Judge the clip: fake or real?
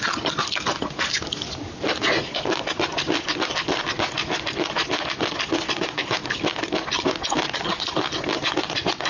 real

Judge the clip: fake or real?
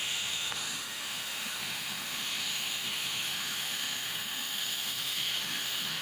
fake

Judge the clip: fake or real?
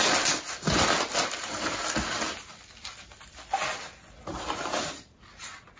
real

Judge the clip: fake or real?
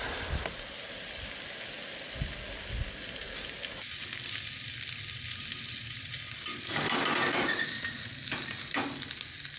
real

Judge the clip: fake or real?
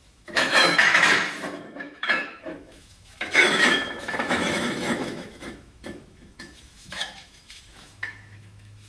fake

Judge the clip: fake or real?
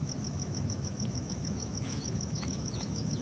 fake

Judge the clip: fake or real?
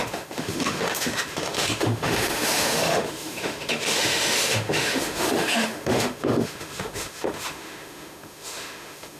fake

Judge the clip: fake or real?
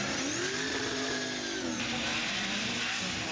real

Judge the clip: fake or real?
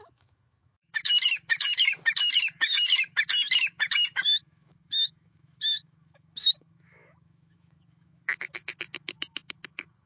fake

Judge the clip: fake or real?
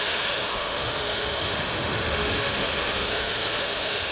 fake